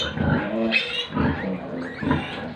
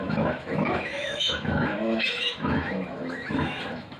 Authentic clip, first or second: first